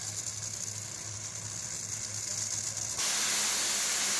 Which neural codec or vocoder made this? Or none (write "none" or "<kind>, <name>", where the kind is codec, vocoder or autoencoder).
none